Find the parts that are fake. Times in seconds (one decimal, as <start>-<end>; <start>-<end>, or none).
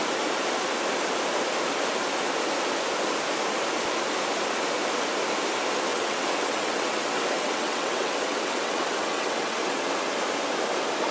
5.9-9.8